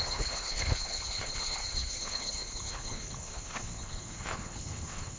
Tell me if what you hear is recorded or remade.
remade